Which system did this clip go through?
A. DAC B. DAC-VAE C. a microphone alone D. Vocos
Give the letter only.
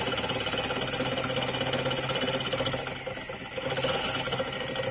C